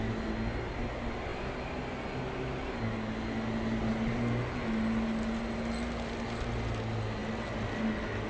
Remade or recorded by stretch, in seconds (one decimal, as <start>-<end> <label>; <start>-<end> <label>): 0.0-8.3 recorded